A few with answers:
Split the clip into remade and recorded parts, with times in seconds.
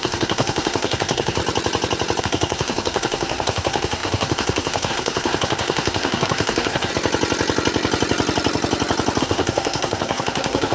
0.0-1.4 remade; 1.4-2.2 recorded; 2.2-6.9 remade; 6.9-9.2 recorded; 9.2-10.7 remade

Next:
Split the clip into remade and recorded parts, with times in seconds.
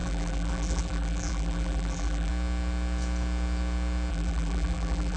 0.0-2.3 remade; 2.3-4.1 recorded; 4.1-5.2 remade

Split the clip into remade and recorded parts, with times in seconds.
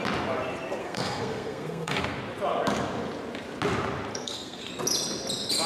0.0-0.8 recorded; 0.8-2.2 remade; 2.2-4.1 recorded; 4.1-4.7 remade; 4.7-5.7 recorded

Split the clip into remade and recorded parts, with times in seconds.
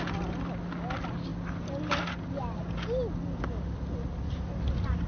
0.0-5.1 recorded